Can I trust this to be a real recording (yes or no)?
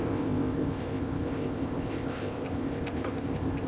no